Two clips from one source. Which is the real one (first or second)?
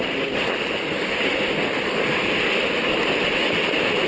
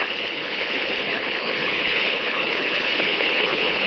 first